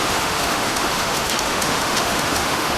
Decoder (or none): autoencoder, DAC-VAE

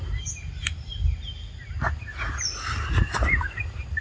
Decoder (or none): none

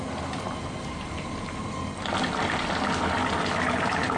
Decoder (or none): none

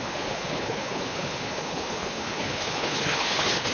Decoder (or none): codec, HILCodec